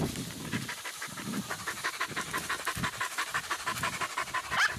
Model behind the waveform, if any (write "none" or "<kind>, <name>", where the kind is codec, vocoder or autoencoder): none